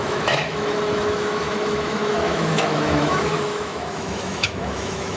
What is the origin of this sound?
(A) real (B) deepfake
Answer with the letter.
B